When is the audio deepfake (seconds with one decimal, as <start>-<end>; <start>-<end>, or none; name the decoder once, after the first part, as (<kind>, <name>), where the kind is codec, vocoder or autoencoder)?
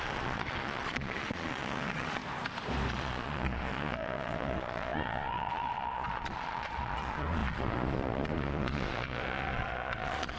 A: 0.0-2.2 (vocoder, Vocos); 2.9-10.4